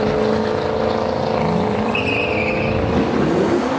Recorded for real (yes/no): yes